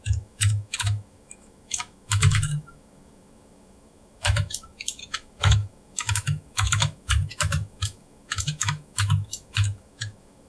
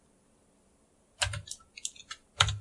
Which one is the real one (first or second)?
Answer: second